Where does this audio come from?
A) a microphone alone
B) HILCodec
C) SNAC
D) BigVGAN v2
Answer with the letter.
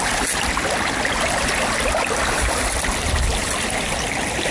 A